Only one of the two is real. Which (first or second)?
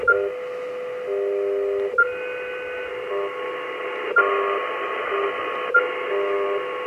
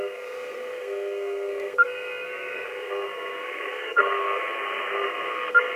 first